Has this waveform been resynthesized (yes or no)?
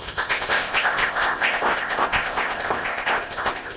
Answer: yes